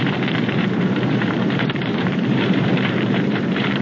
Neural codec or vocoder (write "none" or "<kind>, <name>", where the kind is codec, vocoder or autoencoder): vocoder, BigVGAN v2